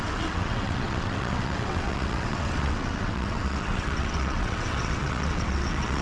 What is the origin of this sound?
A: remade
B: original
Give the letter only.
A